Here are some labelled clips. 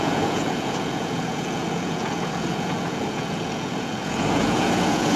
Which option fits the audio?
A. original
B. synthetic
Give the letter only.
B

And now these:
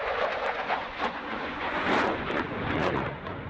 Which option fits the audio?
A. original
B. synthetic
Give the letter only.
B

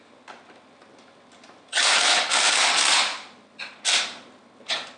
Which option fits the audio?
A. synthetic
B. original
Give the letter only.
B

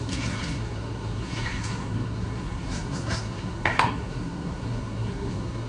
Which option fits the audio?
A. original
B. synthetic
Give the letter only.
B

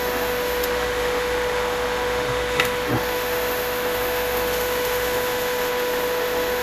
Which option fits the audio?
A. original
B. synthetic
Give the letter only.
B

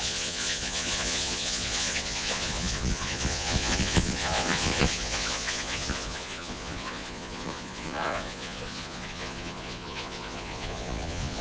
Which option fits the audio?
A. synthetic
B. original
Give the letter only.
A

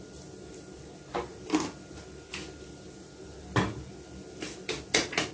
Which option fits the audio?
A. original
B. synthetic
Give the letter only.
A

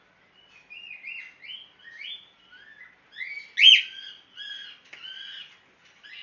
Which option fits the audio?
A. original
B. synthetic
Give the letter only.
A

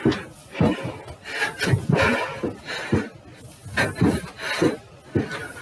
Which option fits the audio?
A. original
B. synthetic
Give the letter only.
A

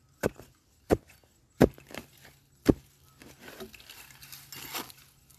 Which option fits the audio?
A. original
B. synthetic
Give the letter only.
A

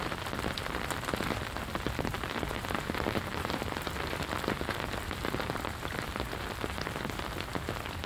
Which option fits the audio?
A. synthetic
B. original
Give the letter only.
A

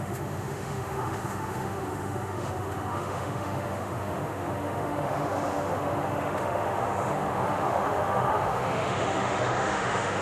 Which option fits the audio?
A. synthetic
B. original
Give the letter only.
A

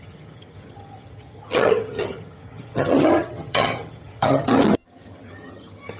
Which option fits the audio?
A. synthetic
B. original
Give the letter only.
A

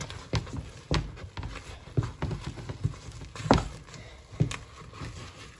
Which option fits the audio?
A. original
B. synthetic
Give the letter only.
A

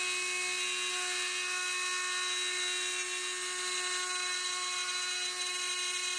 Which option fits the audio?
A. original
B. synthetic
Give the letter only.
A